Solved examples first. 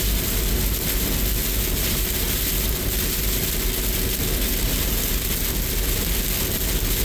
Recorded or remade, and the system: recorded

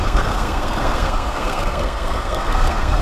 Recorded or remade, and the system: remade, codec, SNAC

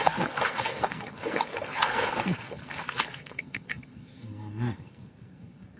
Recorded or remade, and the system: remade, codec, SNAC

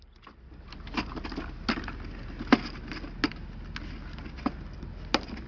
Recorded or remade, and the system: recorded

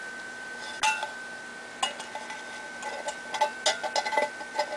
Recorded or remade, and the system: recorded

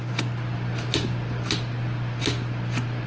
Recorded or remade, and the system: recorded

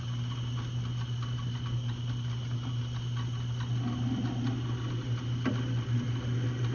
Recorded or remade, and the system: recorded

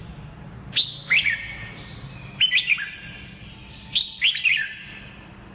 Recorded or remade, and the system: recorded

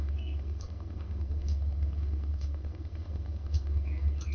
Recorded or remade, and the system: remade, codec, SNAC